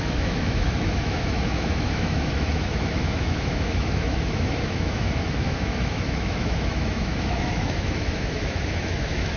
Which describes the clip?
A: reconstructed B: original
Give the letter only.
A